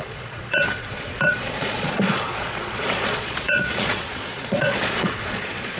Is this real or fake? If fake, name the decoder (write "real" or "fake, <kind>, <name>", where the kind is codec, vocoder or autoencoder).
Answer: fake, vocoder, Vocos